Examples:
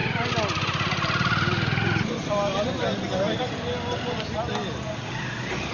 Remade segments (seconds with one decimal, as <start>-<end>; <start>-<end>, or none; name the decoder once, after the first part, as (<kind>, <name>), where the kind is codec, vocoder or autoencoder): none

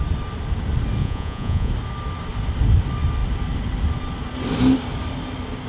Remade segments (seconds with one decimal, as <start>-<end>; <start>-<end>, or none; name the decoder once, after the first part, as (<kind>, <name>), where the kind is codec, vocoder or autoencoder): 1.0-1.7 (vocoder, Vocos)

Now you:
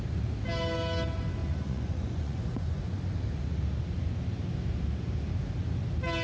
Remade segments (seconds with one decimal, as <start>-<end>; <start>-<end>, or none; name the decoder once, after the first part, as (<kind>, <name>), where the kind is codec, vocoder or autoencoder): 1.4-2.8 (vocoder, Vocos)

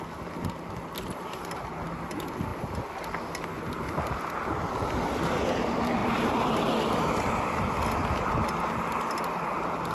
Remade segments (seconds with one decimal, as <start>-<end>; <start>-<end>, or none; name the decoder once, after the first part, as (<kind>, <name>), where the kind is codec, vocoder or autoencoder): none

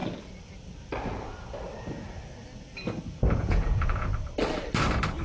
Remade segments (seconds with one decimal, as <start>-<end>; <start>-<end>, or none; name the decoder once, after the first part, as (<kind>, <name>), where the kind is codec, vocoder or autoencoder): 3.1-4.1 (vocoder, Vocos)

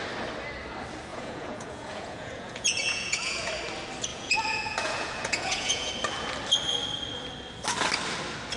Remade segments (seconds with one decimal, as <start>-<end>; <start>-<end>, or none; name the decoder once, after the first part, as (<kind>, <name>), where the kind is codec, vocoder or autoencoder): 1.1-3.5 (vocoder, Vocos); 4.1-5.9